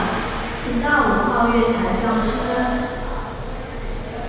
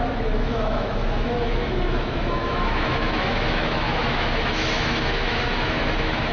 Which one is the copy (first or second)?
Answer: second